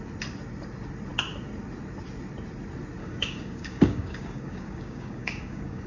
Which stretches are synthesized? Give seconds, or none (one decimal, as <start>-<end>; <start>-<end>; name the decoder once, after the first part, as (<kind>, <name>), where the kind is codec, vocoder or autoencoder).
3.0-5.9 (codec, DAC)